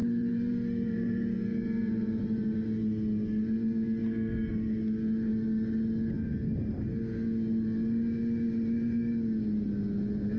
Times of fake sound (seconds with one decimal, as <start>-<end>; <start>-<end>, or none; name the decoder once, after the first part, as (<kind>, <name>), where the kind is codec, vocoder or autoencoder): 0.0-2.4 (vocoder, BigVGAN v2)